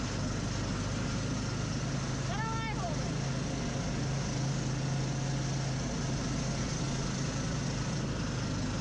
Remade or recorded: recorded